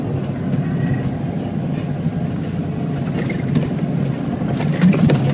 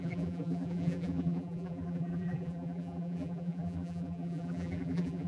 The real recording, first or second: first